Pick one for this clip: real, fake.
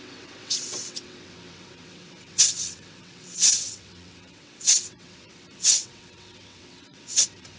fake